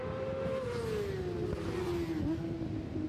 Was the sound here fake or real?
real